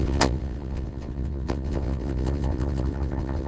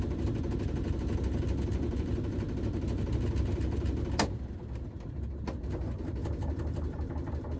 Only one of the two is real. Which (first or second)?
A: second